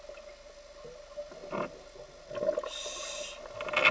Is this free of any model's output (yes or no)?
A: yes